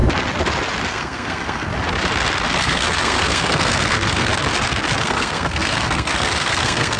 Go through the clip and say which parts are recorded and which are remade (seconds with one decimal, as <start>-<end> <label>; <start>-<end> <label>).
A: 0.0-0.9 recorded; 0.9-1.7 remade; 1.7-2.6 recorded; 2.6-4.3 remade; 4.3-5.0 recorded; 5.0-7.0 remade